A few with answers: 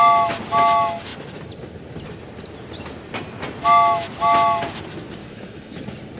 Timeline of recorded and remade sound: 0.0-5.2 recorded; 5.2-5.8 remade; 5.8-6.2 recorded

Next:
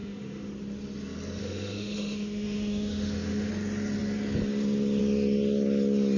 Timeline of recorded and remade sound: 0.0-0.5 remade; 0.5-1.4 recorded; 1.4-3.5 remade; 3.5-6.2 recorded